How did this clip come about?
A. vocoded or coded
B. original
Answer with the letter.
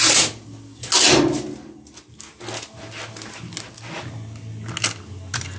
B